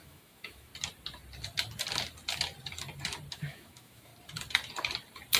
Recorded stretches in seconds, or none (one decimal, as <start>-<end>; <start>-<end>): 0.7-3.3; 4.1-5.4